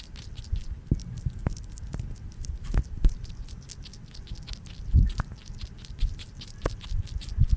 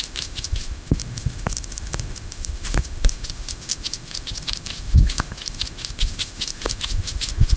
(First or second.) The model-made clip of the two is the second